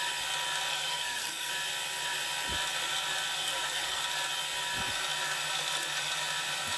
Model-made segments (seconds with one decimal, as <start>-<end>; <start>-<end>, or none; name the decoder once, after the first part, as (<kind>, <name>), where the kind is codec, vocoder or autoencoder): 0.7-1.5 (codec, SNAC); 3.4-4.0